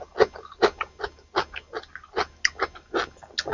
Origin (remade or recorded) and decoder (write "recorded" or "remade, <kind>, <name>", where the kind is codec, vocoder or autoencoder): recorded